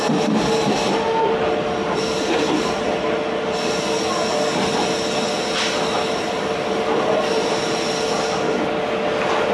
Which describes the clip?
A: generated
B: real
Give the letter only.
B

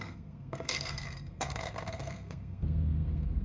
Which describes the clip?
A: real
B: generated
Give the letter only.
B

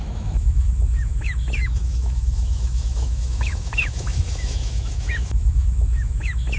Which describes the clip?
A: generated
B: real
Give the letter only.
A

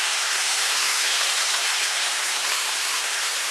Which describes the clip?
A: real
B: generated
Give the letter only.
B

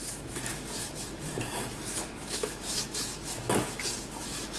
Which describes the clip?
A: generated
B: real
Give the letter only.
A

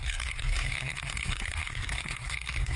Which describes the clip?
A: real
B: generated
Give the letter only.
B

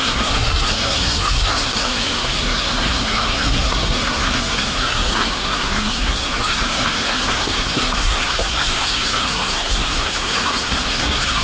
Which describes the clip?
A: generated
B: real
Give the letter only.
A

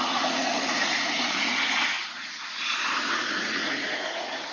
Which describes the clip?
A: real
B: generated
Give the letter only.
B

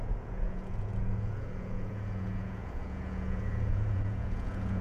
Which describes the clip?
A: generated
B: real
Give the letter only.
A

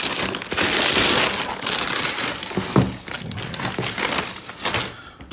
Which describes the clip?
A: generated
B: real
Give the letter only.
B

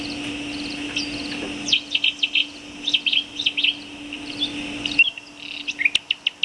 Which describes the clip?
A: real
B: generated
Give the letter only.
A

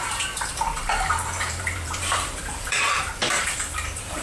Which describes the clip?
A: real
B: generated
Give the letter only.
B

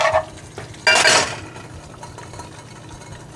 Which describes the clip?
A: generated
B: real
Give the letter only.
B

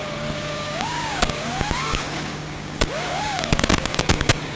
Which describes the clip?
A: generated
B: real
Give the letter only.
A